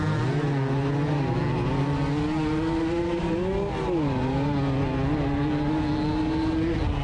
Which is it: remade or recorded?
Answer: recorded